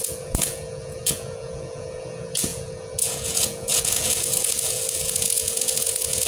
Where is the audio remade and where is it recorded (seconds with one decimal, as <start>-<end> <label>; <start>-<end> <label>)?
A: 0.0-6.3 remade